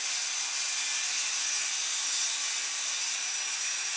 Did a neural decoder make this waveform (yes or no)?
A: no